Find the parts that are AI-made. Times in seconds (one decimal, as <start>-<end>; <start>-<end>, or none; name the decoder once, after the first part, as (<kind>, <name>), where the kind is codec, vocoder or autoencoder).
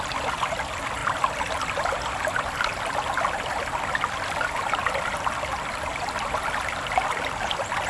none